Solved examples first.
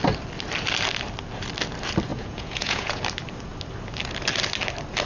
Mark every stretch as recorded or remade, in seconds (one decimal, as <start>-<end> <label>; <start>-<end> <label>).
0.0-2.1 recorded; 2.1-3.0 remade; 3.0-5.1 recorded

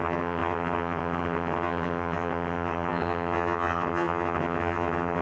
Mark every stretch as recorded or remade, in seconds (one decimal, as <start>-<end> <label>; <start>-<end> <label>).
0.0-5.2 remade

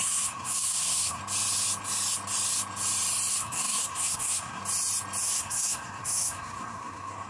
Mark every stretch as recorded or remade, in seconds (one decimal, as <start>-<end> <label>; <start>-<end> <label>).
0.0-1.2 remade; 1.2-3.3 recorded; 3.3-4.6 remade; 4.6-5.2 recorded; 5.2-7.3 remade